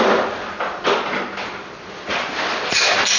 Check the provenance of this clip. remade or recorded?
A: recorded